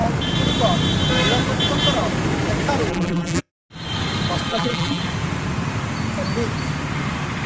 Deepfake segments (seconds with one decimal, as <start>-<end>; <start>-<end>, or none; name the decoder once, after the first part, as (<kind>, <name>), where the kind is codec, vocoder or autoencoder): 2.9-3.5 (vocoder, BigVGAN v2); 4.5-5.0